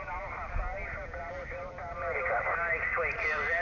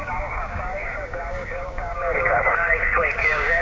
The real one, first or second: first